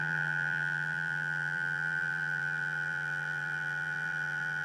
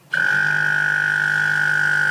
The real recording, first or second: second